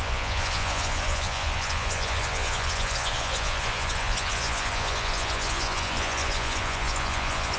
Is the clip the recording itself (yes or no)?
no